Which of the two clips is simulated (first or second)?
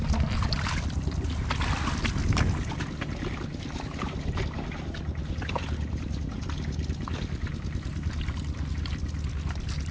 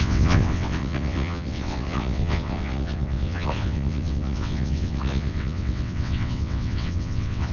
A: second